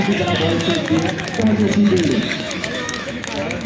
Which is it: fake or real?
fake